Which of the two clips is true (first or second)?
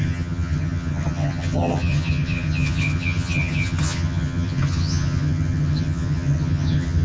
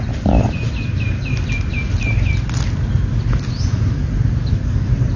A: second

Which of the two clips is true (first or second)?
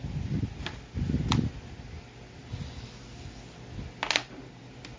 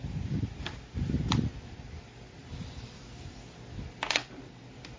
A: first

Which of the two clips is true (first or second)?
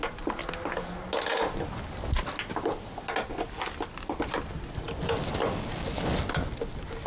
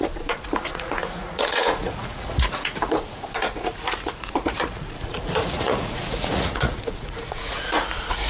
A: first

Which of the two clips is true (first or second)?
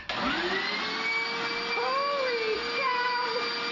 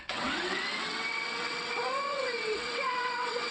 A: first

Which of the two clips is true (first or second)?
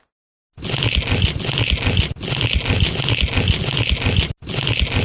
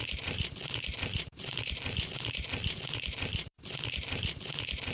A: first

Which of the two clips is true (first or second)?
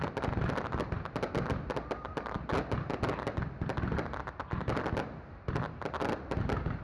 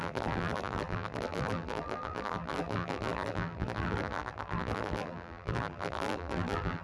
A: first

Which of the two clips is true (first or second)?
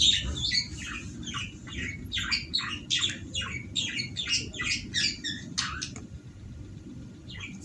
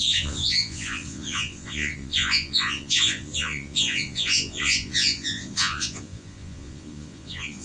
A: first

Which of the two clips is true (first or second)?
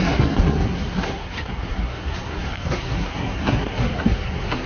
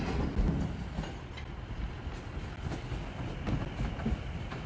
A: second